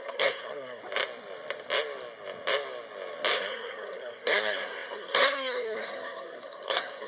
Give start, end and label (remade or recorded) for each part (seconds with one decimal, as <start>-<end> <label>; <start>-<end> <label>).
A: 0.0-0.8 remade; 0.8-3.3 recorded; 3.3-7.1 remade